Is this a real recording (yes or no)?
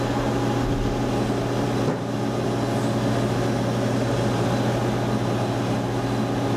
yes